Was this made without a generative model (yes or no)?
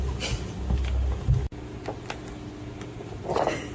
yes